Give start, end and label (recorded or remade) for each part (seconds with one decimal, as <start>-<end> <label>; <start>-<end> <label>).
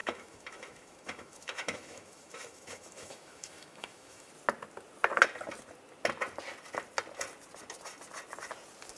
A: 0.0-4.3 remade; 4.3-9.0 recorded